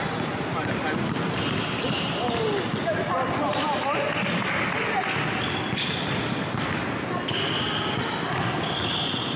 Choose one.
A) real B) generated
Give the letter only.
A